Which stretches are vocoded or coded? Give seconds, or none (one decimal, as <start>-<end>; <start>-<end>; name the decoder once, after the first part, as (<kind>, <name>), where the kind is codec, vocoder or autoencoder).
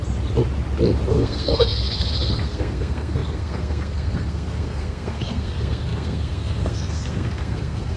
1.1-8.0 (codec, SNAC)